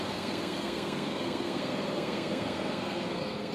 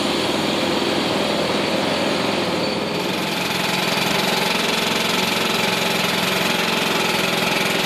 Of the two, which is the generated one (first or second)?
first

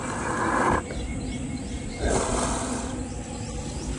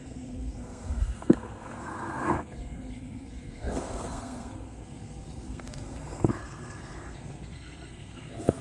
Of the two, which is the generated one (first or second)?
second